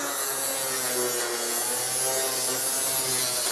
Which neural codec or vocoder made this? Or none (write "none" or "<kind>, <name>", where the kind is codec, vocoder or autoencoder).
none